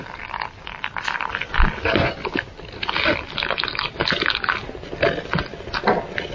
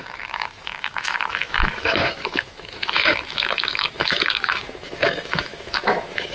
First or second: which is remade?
second